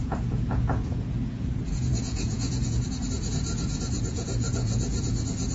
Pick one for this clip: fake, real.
fake